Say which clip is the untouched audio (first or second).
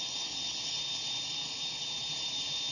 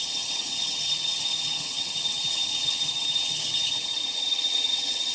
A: first